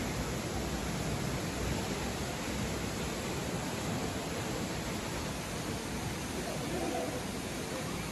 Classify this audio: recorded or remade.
remade